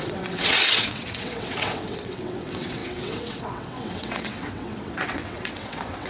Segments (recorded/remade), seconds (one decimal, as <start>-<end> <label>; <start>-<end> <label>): 0.0-6.1 remade